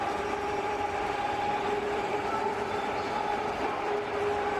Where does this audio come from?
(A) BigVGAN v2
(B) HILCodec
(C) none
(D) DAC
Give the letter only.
A